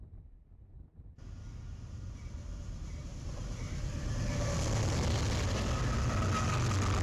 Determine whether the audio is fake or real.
real